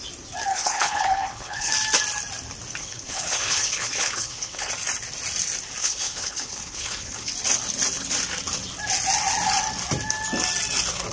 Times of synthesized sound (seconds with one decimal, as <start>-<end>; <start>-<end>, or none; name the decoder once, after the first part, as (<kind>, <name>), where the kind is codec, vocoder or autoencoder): 0.5-1.7 (codec, HILCodec); 2.8-4.7; 5.8-7.3

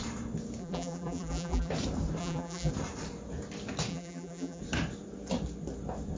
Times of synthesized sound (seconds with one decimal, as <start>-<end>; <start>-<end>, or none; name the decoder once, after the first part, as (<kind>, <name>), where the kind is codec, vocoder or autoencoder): 0.6-1.7 (vocoder, BigVGAN v2); 2.2-2.7; 3.9-4.6

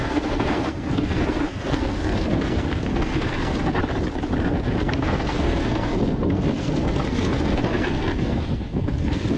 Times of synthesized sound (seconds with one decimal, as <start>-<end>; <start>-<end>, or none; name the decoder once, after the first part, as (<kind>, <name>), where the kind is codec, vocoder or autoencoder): 0.0-3.8 (codec, SNAC); 4.4-9.4

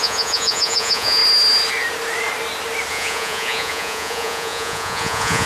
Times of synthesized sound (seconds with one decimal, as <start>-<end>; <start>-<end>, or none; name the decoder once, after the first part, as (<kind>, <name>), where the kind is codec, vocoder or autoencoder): 0.0-1.2 (vocoder, Vocos); 2.9-5.5

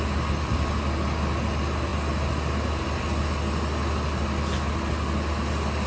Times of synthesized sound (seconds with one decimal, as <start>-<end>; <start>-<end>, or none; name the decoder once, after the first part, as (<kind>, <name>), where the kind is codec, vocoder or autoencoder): none

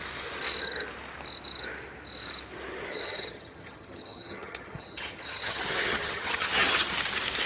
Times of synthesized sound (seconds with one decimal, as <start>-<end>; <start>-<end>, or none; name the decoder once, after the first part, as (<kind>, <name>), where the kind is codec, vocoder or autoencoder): 2.9-6.9 (vocoder, HiFi-GAN)